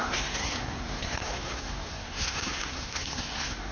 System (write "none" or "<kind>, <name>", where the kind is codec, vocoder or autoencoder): codec, SNAC